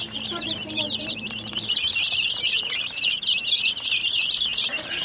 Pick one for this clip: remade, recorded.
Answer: remade